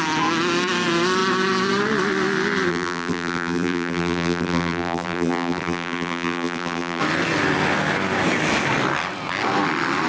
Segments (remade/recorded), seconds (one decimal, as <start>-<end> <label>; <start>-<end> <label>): 0.0-2.7 recorded; 2.7-7.0 remade; 7.0-10.1 recorded